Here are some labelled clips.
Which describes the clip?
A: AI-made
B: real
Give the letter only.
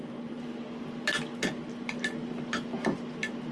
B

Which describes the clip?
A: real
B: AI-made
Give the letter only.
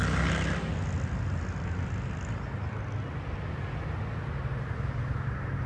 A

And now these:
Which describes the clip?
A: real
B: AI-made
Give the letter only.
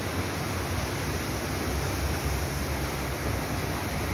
A